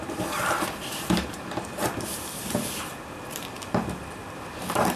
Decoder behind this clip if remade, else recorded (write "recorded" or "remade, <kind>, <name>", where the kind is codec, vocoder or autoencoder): recorded